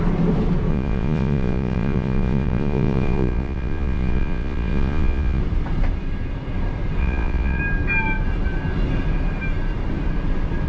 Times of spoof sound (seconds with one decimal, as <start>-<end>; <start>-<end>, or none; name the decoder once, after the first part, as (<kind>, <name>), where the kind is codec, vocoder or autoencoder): 0.7-5.4 (vocoder, Vocos); 7.0-7.6